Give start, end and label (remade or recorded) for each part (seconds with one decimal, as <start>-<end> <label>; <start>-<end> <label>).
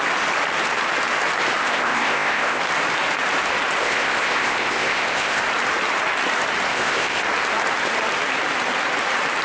0.0-1.6 recorded; 1.6-2.6 remade; 2.6-3.8 recorded; 3.8-5.4 remade; 5.4-6.7 recorded; 6.7-7.2 remade; 7.2-9.4 recorded